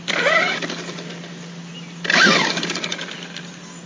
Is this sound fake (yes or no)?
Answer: no